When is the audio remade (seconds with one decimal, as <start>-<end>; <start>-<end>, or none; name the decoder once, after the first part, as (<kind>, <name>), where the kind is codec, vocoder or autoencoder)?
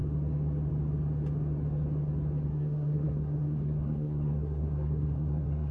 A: 2.5-5.7 (codec, SNAC)